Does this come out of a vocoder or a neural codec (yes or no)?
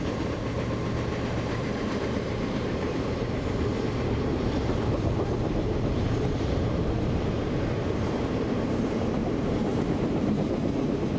yes